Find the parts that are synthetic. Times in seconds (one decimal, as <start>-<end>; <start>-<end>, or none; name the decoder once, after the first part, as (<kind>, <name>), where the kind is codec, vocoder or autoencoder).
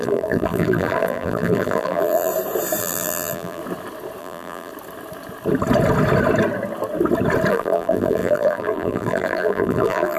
0.0-2.3 (vocoder, BigVGAN v2); 2.8-3.6; 4.2-4.7; 7.5-10.2